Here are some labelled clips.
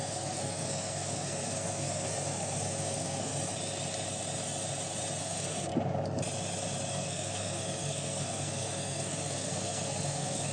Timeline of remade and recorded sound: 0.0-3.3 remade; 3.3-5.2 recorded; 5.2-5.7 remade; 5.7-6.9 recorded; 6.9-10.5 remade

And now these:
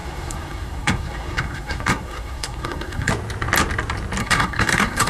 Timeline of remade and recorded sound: 0.0-3.1 remade; 3.1-4.2 recorded; 4.2-5.1 remade

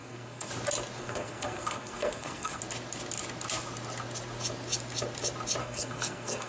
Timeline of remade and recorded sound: 0.0-0.5 remade; 0.5-1.0 recorded; 1.0-2.6 remade; 2.6-5.6 recorded; 5.6-6.5 remade

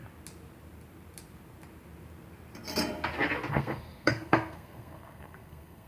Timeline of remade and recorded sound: 0.0-3.5 recorded; 3.5-5.9 remade

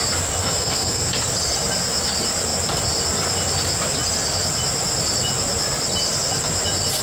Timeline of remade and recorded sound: 0.0-0.4 recorded; 0.4-1.1 remade; 1.1-7.0 recorded